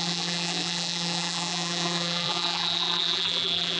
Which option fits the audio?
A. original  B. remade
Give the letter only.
B